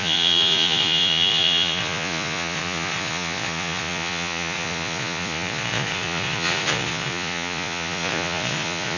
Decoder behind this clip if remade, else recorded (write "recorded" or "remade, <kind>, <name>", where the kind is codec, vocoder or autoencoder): remade, vocoder, Vocos